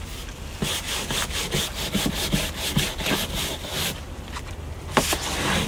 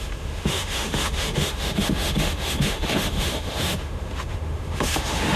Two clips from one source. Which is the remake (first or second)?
second